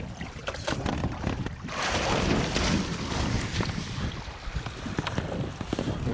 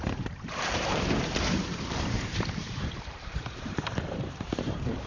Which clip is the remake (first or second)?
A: second